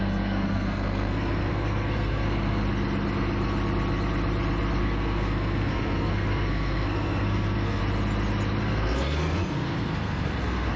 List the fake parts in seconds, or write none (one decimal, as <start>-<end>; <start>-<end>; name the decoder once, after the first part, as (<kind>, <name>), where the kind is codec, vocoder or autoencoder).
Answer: 0.0-2.6 (codec, SNAC); 4.8-7.8; 8.6-10.8